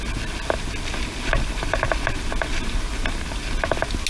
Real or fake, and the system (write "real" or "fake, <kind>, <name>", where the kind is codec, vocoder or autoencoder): real